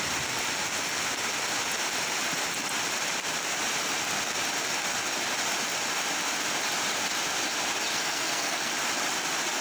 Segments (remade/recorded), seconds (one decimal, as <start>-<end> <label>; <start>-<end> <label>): 0.0-7.9 recorded; 7.9-8.7 remade; 8.7-9.6 recorded